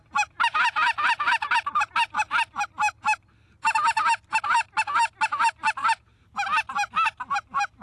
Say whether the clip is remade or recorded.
recorded